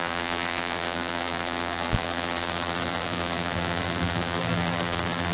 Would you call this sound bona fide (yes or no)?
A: no